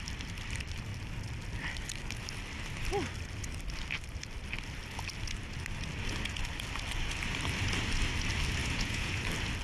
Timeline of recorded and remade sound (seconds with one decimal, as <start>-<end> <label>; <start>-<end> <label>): 0.0-8.6 recorded; 8.6-9.2 remade; 9.2-9.6 recorded